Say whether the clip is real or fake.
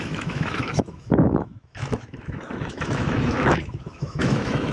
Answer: fake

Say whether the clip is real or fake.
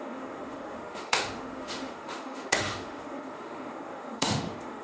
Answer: fake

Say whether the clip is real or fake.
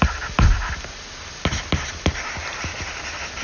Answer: real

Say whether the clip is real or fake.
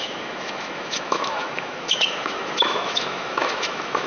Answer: fake